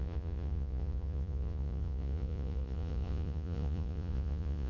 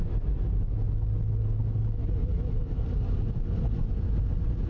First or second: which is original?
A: second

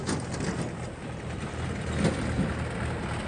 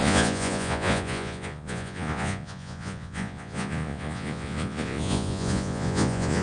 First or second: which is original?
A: first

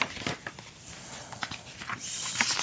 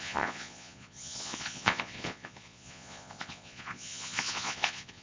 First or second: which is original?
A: first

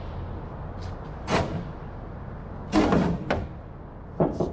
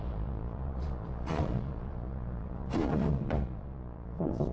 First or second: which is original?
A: first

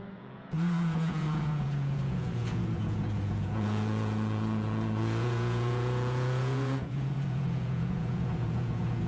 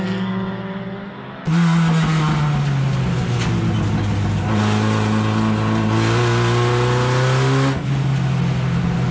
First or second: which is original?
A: second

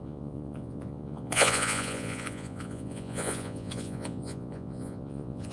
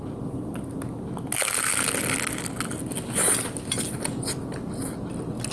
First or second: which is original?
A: second